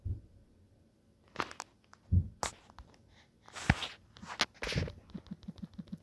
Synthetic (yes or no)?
no